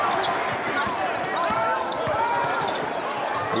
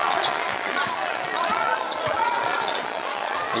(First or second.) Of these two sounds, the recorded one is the first